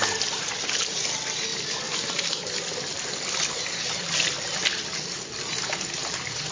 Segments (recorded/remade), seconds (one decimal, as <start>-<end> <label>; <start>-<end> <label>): 0.0-1.5 recorded; 1.5-5.4 remade; 5.4-6.5 recorded